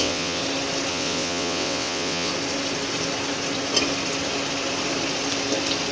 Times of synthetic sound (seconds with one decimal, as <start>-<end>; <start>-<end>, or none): 0.0-0.4; 0.9-2.3